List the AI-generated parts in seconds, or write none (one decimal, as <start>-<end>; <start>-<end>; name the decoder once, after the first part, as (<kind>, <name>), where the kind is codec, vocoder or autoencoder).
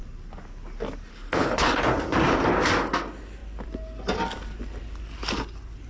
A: 1.1-1.8 (codec, HILCodec)